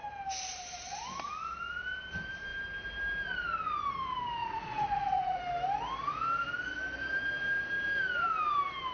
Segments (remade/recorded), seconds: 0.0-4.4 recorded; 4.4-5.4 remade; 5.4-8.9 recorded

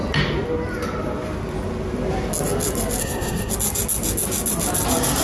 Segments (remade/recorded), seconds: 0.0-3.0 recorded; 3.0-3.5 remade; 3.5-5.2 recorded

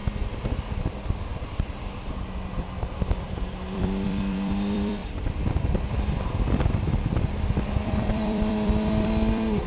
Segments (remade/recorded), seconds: 0.0-0.7 recorded; 0.7-9.7 remade

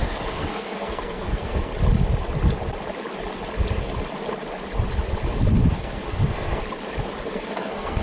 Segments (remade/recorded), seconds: 0.0-1.7 remade; 1.7-5.7 recorded; 5.7-6.6 remade; 6.6-7.3 recorded; 7.3-8.0 remade

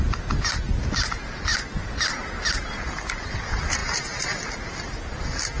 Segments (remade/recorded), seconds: 0.0-5.6 recorded

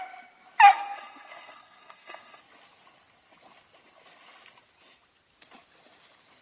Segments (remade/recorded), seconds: 0.0-0.7 recorded; 0.7-2.4 remade; 2.4-6.4 recorded

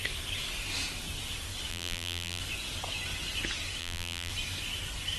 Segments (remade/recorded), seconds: 0.0-1.7 recorded; 1.7-2.4 remade; 2.4-3.8 recorded; 3.8-4.3 remade; 4.3-5.2 recorded

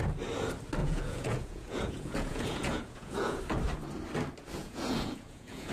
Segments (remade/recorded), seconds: 0.0-0.8 recorded; 0.8-3.4 remade; 3.4-4.6 recorded; 4.6-5.7 remade